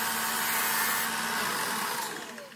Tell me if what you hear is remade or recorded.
recorded